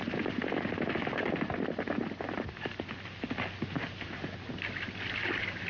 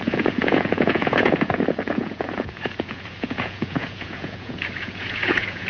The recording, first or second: first